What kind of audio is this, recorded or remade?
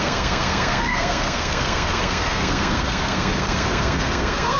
remade